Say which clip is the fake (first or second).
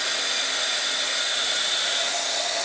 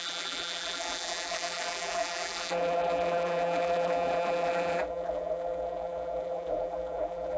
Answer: second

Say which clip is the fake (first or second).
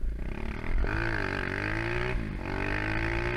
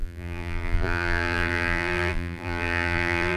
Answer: second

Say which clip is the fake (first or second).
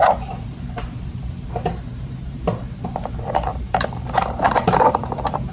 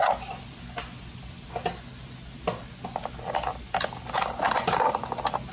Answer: first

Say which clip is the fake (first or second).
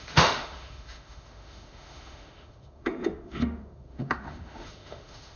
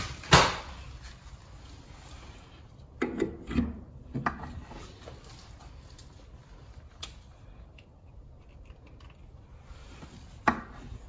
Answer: first